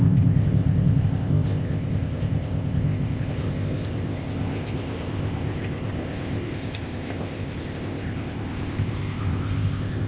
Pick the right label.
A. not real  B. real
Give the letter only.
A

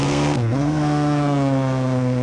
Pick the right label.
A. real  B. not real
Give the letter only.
B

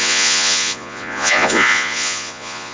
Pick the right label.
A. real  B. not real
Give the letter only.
B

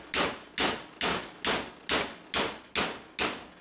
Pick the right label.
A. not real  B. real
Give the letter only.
B